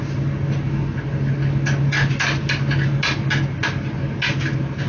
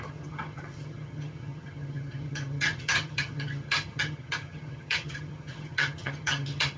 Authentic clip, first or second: first